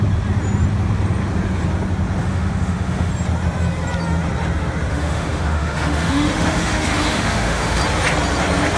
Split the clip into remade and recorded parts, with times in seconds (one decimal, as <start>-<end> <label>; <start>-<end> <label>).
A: 0.0-2.2 recorded; 2.2-3.1 remade; 3.1-4.9 recorded; 4.9-7.8 remade; 7.8-8.8 recorded